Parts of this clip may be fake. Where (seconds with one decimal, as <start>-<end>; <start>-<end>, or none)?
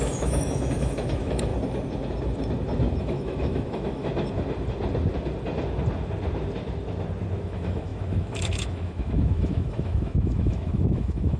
0.0-1.5; 3.0-4.1; 7.4-11.4